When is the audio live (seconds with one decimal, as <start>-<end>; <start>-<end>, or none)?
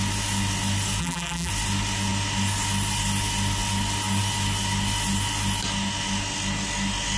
0.0-1.0; 1.5-7.2